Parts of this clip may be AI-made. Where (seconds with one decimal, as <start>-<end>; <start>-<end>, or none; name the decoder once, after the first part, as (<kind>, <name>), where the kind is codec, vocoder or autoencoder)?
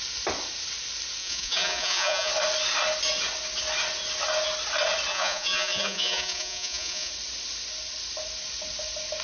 1.2-2.3 (vocoder, Vocos); 5.1-7.1